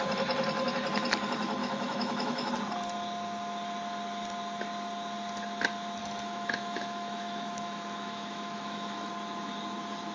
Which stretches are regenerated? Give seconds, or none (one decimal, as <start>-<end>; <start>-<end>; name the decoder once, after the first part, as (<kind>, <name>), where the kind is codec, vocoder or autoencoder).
1.6-2.5 (autoencoder, DAC-VAE); 6.0-9.1